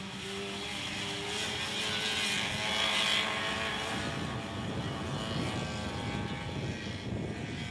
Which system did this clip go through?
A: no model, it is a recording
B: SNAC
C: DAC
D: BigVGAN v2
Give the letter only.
A